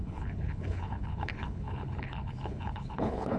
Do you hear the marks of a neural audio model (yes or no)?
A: yes